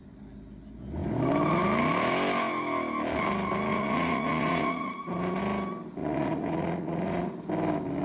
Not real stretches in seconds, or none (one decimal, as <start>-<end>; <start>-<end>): 3.7-5.4; 6.0-7.3